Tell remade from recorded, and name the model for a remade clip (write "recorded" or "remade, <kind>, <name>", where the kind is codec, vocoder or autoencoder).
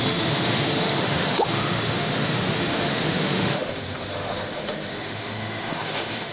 remade, autoencoder, DAC-VAE